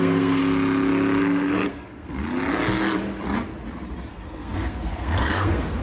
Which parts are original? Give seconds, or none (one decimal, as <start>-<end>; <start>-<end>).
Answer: 0.4-1.2; 2.2-4.1